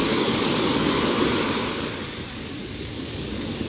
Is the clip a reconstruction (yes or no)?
yes